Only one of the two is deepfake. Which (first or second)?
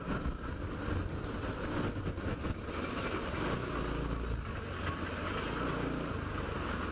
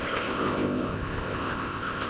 second